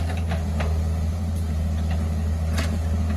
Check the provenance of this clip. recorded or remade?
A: recorded